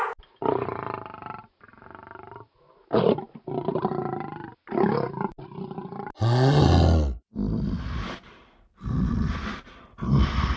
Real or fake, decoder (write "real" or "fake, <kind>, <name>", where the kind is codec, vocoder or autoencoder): real